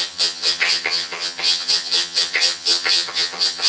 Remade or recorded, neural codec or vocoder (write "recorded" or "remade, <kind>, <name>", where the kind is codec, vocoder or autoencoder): remade, vocoder, HiFi-GAN